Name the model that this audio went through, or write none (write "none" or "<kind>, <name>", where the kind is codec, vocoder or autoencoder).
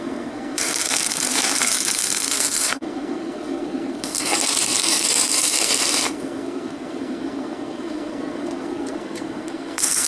codec, SNAC